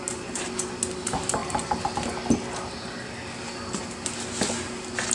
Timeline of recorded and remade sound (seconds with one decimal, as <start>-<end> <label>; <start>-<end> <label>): 0.0-5.1 recorded